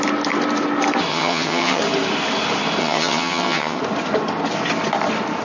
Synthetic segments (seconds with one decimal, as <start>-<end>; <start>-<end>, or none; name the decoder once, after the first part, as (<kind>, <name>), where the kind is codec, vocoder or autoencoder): 1.1-1.8 (vocoder, HiFi-GAN); 2.8-3.8